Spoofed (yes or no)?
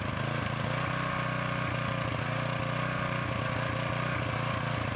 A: no